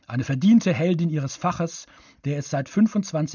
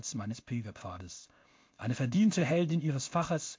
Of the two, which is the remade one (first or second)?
second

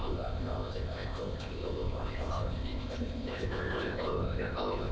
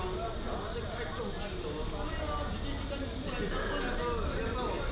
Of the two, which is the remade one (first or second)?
first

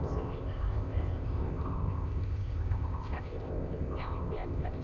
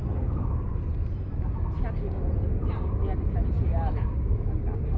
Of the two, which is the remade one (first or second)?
first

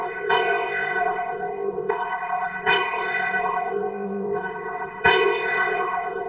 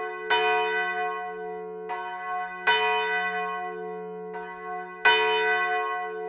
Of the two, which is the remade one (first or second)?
first